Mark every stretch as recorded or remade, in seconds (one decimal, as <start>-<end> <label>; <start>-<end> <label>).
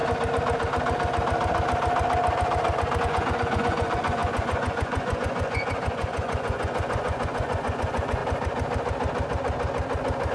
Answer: 0.0-3.0 recorded; 3.0-8.2 remade; 8.2-10.3 recorded